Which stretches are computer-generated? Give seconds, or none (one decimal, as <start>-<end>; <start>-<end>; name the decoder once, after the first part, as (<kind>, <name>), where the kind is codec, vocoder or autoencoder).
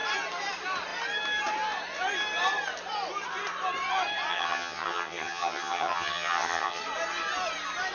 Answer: 4.3-6.8 (vocoder, HiFi-GAN)